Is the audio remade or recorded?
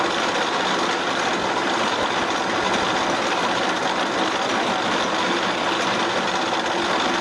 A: recorded